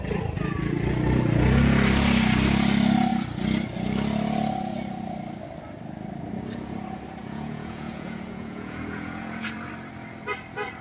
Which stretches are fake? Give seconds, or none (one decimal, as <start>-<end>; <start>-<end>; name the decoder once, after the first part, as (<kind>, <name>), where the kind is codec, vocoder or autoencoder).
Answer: 7.2-9.7 (vocoder, Vocos)